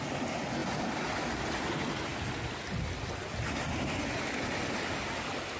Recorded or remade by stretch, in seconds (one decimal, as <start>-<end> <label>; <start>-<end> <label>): 0.0-5.6 recorded